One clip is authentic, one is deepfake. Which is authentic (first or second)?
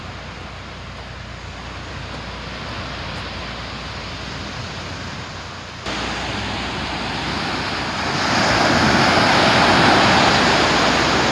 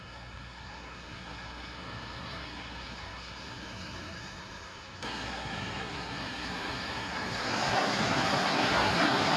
first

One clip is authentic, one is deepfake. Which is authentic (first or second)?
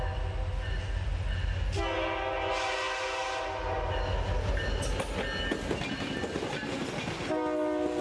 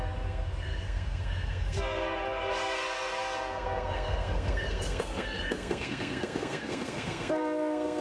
first